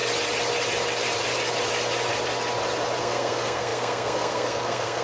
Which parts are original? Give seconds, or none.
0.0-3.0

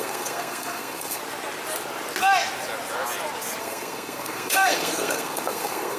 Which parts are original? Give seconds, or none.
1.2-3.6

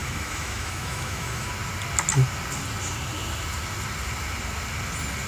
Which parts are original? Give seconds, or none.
1.5-5.3

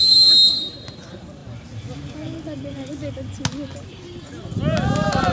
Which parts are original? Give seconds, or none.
0.0-5.3